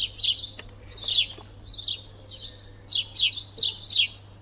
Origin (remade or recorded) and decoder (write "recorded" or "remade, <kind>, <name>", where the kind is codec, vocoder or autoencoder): recorded